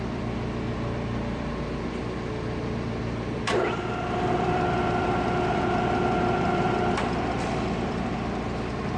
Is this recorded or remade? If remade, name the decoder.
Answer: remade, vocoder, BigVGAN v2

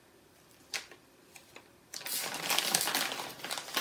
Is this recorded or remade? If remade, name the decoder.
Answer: recorded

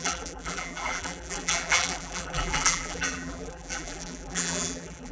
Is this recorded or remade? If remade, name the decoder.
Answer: remade, vocoder, BigVGAN v2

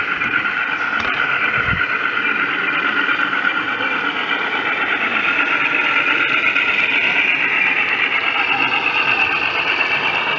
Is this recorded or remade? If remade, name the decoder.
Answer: recorded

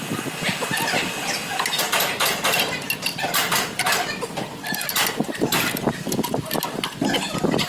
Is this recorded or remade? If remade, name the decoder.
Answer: recorded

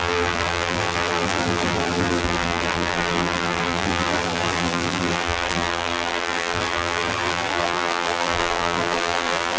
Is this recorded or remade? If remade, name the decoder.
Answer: remade, vocoder, BigVGAN v2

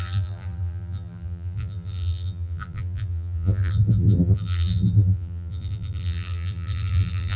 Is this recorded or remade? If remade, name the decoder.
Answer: remade, vocoder, BigVGAN v2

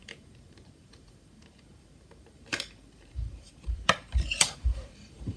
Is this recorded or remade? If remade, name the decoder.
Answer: remade, vocoder, BigVGAN v2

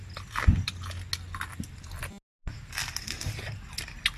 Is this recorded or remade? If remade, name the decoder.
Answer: recorded